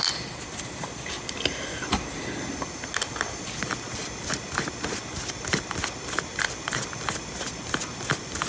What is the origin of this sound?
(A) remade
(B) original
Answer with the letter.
B